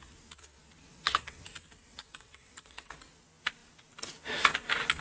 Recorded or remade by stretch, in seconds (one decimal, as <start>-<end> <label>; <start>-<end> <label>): 0.0-0.9 recorded; 0.9-1.4 remade; 1.4-1.9 recorded; 1.9-2.9 remade; 2.9-5.0 recorded